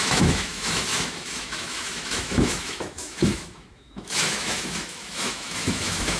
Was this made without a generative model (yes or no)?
no